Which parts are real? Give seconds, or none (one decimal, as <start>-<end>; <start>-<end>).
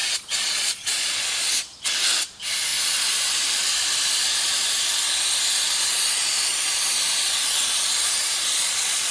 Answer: 1.5-8.2